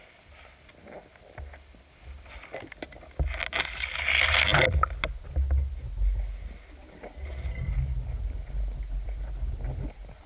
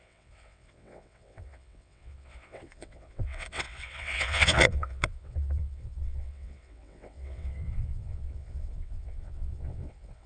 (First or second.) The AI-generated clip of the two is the second